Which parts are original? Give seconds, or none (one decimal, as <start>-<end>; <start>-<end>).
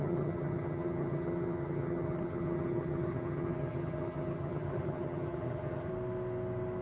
5.9-6.8